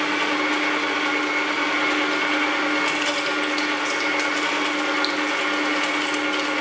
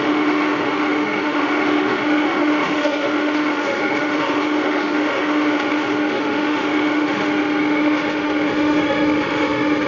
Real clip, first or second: first